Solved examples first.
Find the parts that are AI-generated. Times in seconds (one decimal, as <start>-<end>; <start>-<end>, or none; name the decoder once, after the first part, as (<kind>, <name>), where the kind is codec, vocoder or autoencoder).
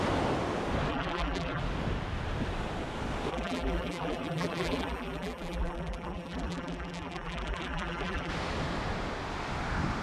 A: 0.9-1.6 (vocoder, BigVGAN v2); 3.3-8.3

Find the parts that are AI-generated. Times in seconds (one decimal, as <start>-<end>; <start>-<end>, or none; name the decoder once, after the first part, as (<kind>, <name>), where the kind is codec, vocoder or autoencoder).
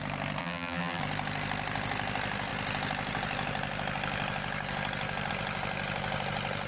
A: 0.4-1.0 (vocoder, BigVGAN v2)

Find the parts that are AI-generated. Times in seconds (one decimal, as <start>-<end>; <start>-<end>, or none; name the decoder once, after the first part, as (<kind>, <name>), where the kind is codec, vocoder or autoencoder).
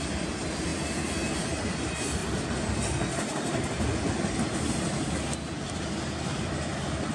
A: none